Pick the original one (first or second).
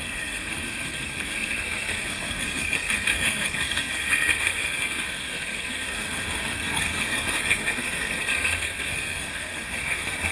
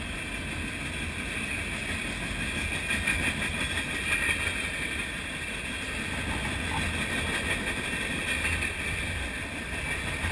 second